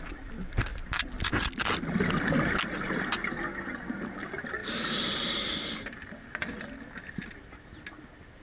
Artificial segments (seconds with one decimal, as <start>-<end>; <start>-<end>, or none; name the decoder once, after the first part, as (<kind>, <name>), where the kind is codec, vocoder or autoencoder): 4.6-6.3 (vocoder, BigVGAN v2)